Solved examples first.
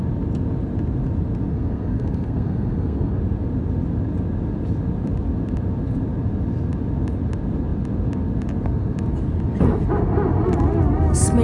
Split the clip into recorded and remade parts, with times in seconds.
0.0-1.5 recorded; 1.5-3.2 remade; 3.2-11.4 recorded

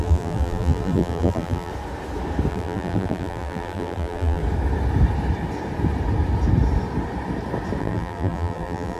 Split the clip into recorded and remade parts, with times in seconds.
0.0-1.7 remade; 1.7-2.5 recorded; 2.5-4.4 remade; 4.4-7.8 recorded; 7.8-9.0 remade

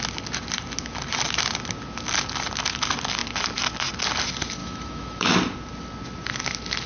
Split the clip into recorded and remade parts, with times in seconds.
0.0-4.6 recorded; 4.6-5.3 remade; 5.3-6.9 recorded

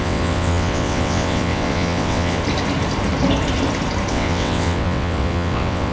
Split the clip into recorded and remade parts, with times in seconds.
0.0-2.4 remade; 2.4-4.1 recorded; 4.1-5.9 remade

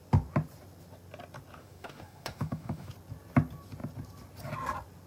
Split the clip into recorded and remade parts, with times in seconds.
0.0-1.6 recorded; 1.6-2.9 remade; 2.9-5.1 recorded